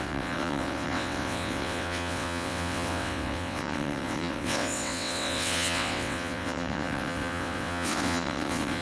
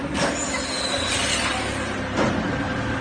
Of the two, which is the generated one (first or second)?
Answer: first